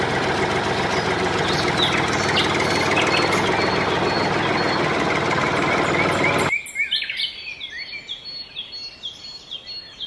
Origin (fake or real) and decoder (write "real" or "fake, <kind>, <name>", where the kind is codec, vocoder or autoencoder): real